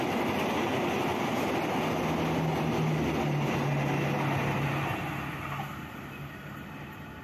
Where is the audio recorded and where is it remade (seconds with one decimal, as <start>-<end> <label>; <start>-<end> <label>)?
0.0-7.2 recorded